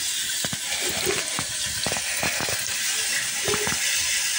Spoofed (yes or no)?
no